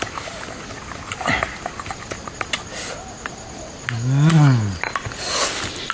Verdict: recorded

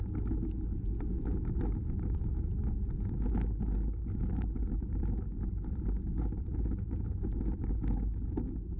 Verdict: recorded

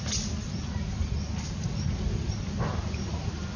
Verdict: remade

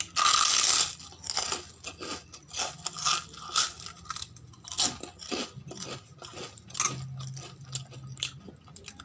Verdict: recorded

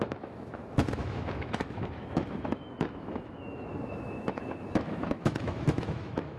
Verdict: remade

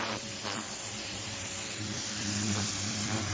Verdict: remade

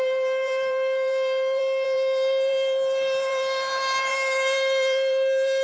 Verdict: remade